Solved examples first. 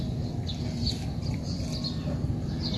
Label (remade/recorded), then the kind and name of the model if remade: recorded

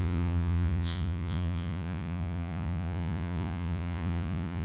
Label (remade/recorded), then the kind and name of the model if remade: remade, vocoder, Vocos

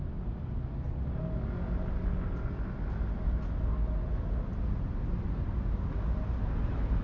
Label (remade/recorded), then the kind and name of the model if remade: recorded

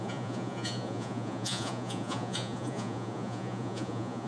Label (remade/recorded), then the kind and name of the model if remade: remade, vocoder, Vocos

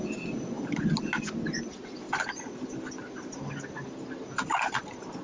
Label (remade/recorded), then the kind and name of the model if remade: recorded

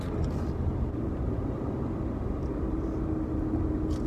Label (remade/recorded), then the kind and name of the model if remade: recorded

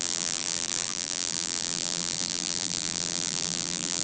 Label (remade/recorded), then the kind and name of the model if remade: remade, vocoder, BigVGAN v2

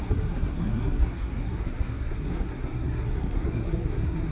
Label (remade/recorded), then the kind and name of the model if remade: remade, codec, SNAC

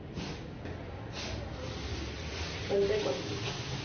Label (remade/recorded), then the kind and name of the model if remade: recorded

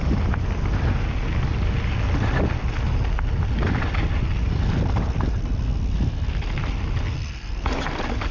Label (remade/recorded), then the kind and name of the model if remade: recorded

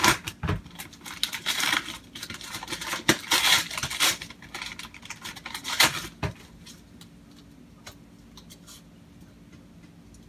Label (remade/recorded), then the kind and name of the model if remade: recorded